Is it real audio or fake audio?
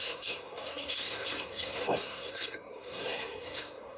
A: fake